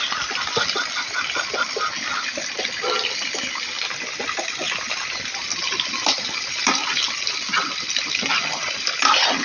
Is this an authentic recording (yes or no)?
yes